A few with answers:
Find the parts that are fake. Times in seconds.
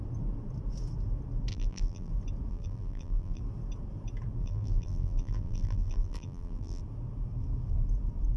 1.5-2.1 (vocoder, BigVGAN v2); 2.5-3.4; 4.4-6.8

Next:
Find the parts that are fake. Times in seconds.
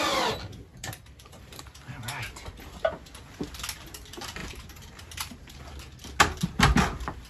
0.7-1.6 (vocoder, BigVGAN v2); 4.4-5.6